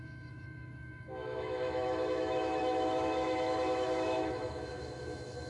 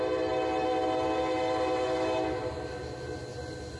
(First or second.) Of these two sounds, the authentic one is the second